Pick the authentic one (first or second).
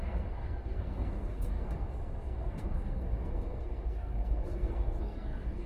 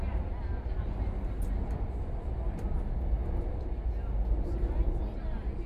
second